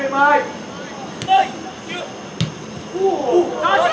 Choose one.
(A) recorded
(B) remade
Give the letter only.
A